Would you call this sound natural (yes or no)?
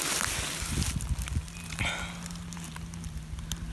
yes